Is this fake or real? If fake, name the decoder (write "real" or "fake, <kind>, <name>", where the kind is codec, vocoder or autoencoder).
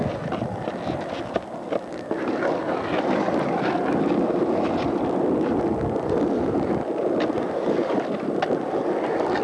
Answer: real